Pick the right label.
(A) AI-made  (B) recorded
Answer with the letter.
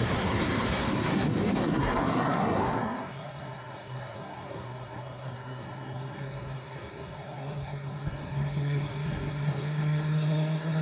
A